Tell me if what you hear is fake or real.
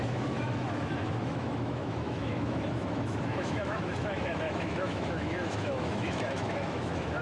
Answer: fake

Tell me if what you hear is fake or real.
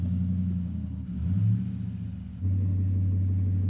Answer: real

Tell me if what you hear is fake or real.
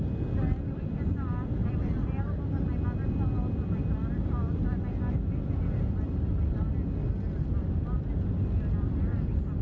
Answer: real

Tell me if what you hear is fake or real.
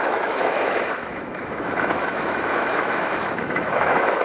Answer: fake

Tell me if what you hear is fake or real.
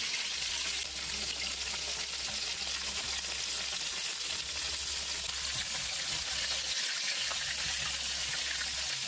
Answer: real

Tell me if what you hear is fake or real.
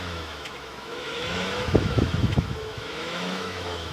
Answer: fake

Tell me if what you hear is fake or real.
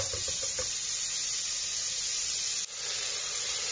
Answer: real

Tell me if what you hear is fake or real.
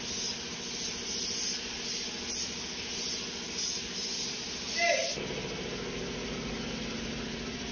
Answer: real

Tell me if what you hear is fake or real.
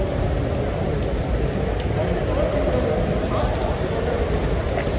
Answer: real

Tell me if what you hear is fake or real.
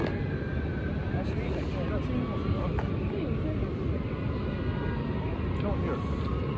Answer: real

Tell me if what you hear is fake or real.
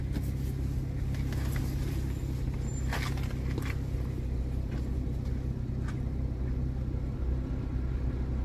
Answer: real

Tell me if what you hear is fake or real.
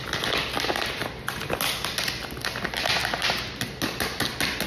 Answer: real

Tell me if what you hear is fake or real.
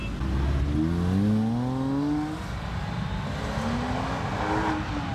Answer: real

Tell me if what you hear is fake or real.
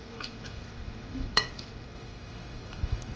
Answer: fake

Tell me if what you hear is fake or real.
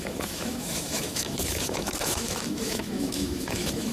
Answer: fake